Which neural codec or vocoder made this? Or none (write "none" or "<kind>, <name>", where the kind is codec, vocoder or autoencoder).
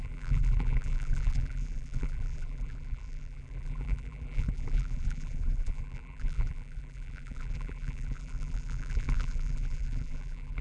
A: vocoder, BigVGAN v2